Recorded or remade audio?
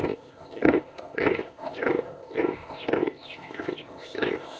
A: remade